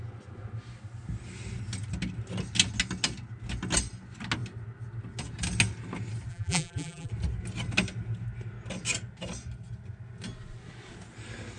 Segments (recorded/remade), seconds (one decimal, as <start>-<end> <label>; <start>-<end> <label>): 0.0-6.3 recorded; 6.3-7.1 remade; 7.1-11.6 recorded